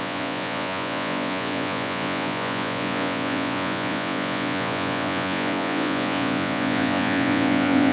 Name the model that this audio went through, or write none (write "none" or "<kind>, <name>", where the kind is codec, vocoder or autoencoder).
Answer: vocoder, Vocos